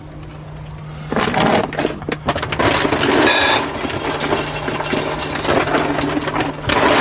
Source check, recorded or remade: recorded